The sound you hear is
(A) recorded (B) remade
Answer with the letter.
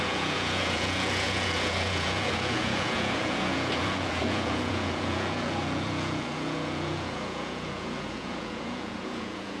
B